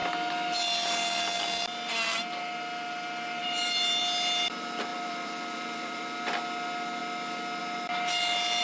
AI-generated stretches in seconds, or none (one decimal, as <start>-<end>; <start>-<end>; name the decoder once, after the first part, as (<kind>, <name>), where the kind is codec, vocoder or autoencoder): 3.4-4.0 (vocoder, BigVGAN v2); 4.9-6.0